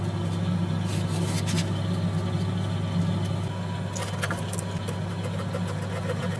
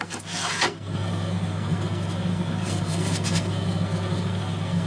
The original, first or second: first